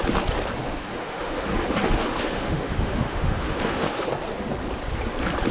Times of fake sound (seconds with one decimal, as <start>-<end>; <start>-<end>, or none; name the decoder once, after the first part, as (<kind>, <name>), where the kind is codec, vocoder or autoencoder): 0.6-1.4 (autoencoder, DAC-VAE); 1.8-4.1